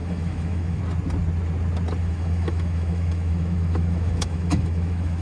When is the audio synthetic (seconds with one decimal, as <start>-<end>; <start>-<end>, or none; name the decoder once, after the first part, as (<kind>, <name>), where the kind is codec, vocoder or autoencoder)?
0.0-0.8 (autoencoder, DAC-VAE); 2.0-5.2